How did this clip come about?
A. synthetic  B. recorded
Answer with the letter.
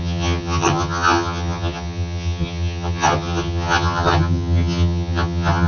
A